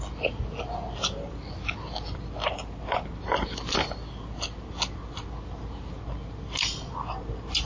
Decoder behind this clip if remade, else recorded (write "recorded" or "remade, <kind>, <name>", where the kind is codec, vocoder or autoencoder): recorded